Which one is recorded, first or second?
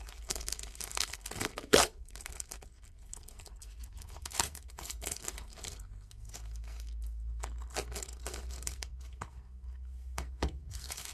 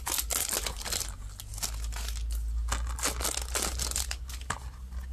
second